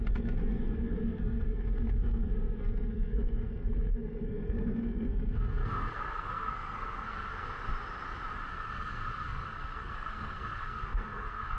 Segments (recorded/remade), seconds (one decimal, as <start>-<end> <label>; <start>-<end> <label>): 0.0-7.7 remade; 7.7-8.5 recorded; 8.5-11.6 remade